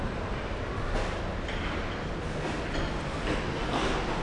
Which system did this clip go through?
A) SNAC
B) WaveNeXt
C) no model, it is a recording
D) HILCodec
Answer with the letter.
C